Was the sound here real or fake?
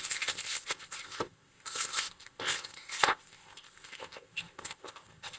fake